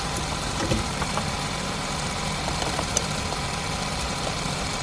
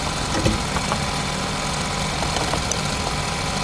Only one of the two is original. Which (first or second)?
second